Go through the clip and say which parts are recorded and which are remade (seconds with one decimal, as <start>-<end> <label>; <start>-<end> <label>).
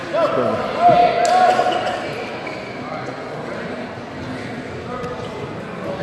0.0-6.0 recorded